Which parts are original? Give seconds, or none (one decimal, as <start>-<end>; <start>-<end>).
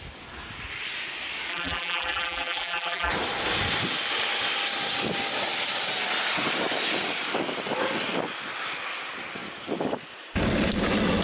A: 0.0-1.5; 3.1-11.2